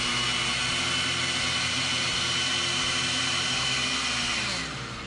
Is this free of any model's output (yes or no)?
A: yes